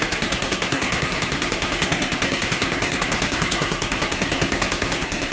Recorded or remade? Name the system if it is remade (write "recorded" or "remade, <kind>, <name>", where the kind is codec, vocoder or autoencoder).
remade, codec, SNAC